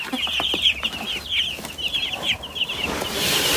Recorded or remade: remade